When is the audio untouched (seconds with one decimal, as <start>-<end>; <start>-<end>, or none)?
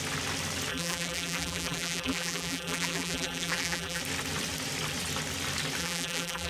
0.0-0.7; 4.0-5.8